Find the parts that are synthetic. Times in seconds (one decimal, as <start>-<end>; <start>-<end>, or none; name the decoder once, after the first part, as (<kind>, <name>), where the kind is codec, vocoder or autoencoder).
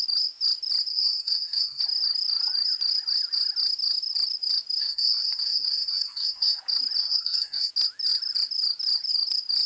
0.9-1.8 (codec, SNAC); 4.8-6.6; 7.0-7.7